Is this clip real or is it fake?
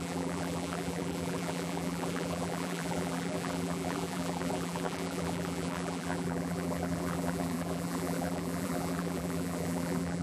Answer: fake